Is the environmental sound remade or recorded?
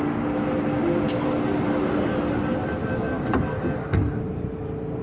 recorded